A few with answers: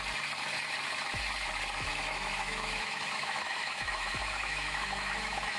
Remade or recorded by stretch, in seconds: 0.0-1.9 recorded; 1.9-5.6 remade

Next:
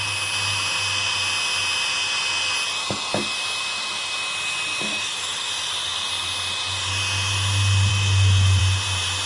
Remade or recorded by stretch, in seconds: 0.0-4.9 recorded; 4.9-5.4 remade; 5.4-7.9 recorded; 7.9-8.6 remade; 8.6-9.3 recorded

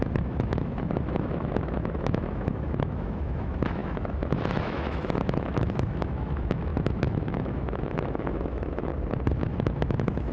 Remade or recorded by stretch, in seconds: 0.0-8.9 remade; 8.9-9.5 recorded; 9.5-10.3 remade

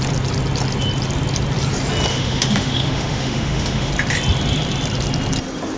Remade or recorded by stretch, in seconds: 0.0-2.1 recorded; 2.1-3.9 remade; 3.9-5.8 recorded